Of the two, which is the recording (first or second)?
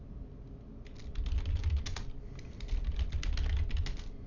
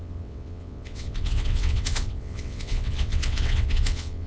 first